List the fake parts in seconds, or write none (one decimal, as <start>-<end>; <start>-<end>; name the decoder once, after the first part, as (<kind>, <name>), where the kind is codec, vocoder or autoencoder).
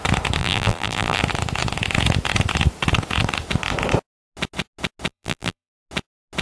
0.4-1.2 (vocoder, BigVGAN v2); 5.1-5.7